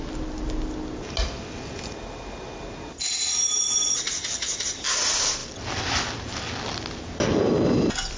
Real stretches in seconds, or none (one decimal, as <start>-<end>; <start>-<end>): 0.0-8.2